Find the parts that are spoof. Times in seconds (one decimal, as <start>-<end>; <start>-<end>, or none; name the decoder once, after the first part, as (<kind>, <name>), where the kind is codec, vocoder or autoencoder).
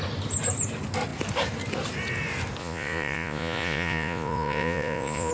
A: 2.6-5.3 (vocoder, Vocos)